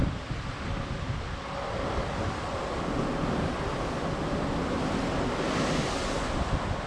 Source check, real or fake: real